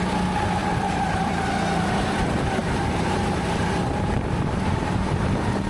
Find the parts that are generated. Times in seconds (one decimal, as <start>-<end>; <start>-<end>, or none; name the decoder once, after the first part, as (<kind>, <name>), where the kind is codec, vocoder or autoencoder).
0.6-1.3 (vocoder, BigVGAN v2); 2.6-5.0